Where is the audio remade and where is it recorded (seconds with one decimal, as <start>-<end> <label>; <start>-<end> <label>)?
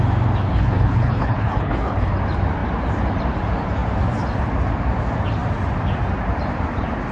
0.0-0.4 recorded; 0.4-2.1 remade; 2.1-7.1 recorded